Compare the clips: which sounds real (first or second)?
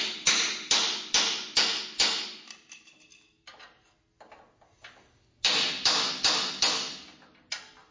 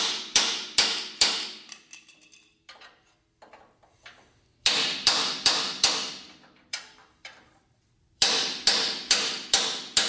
first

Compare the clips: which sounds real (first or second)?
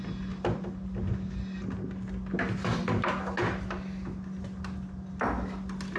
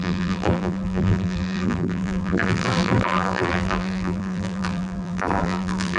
first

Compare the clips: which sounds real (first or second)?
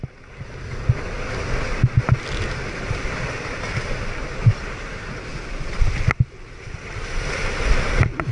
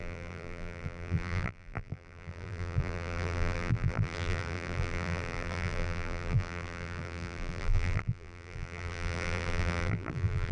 first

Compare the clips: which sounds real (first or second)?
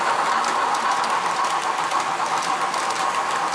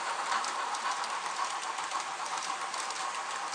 first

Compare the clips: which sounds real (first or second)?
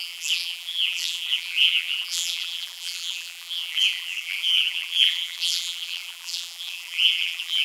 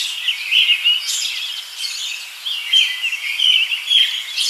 second